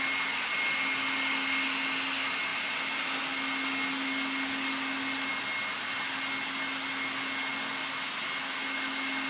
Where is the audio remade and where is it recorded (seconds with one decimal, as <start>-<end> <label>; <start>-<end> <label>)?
0.0-9.3 recorded